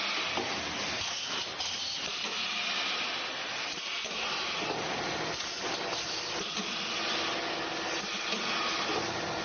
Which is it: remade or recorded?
recorded